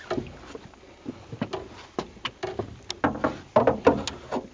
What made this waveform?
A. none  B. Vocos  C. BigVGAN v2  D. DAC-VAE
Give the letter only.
A